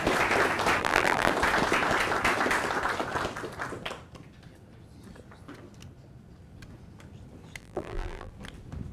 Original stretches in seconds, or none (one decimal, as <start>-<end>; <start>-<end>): 0.0-0.8; 1.3-7.6; 8.3-8.9